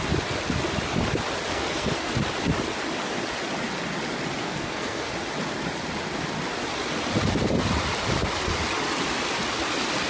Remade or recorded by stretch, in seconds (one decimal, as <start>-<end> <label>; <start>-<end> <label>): 0.0-1.5 recorded; 1.5-2.1 remade; 2.1-4.4 recorded; 4.4-5.1 remade; 5.1-10.1 recorded